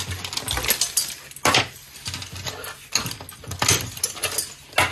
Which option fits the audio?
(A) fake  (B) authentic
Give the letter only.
B